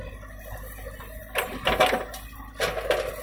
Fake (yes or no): no